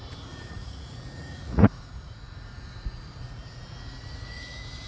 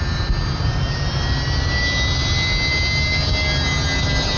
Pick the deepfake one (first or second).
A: first